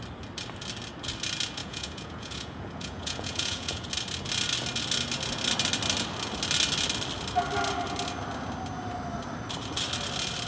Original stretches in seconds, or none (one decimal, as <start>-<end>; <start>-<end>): 0.0-1.6; 3.9-10.5